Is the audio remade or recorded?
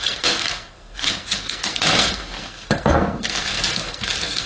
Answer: remade